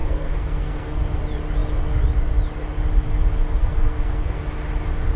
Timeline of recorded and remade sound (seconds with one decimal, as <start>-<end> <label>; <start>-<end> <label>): 0.0-1.0 remade; 1.0-3.6 recorded; 3.6-4.4 remade; 4.4-5.2 recorded